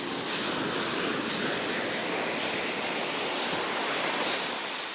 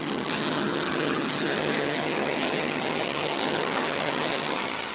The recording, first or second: first